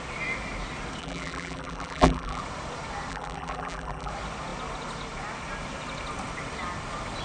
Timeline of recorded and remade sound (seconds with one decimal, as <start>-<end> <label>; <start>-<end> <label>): 0.0-1.0 recorded; 1.0-2.4 remade; 2.4-3.1 recorded; 3.1-4.1 remade; 4.1-7.2 recorded